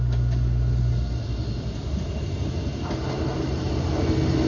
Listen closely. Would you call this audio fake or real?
real